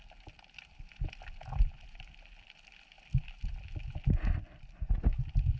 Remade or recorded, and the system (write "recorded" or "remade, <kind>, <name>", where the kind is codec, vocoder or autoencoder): recorded